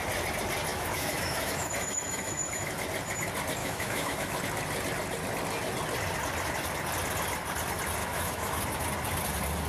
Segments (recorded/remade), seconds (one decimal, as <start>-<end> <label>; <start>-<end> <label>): 0.0-0.7 recorded; 0.7-2.7 remade; 2.7-3.6 recorded; 3.6-4.4 remade; 4.4-8.0 recorded; 8.0-8.6 remade; 8.6-9.7 recorded